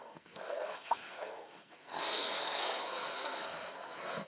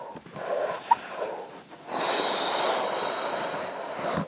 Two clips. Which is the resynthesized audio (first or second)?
first